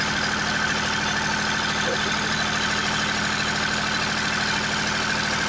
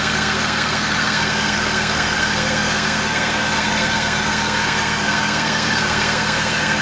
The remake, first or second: second